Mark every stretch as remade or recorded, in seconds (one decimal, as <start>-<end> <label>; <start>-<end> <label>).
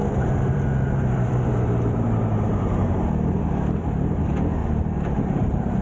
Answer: 0.0-3.5 remade; 3.5-4.6 recorded; 4.6-5.8 remade